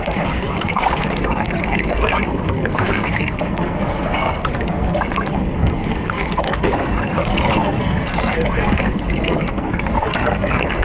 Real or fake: fake